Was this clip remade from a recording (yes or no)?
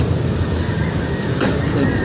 no